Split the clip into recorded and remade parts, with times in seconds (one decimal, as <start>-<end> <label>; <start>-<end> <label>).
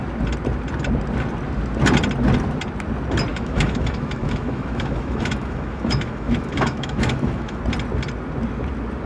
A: 0.0-3.3 recorded; 3.3-7.6 remade; 7.6-9.1 recorded